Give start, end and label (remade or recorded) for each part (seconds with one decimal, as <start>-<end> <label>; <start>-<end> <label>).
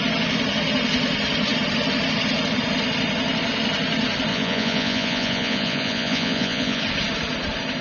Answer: 0.0-4.3 recorded; 4.3-6.8 remade; 6.8-7.8 recorded